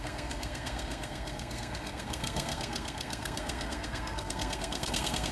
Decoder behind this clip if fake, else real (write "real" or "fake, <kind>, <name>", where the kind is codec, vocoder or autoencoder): fake, codec, SNAC